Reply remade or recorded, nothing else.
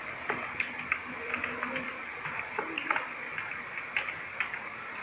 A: recorded